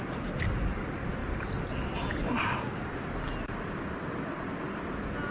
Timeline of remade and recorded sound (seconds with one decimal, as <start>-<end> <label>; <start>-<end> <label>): 0.0-5.3 recorded